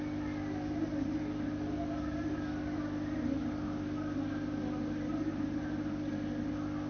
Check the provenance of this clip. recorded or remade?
recorded